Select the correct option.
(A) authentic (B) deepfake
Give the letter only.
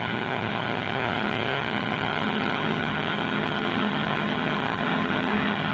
B